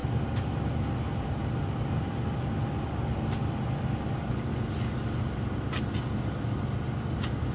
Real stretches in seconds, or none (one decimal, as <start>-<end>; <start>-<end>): 0.0-7.5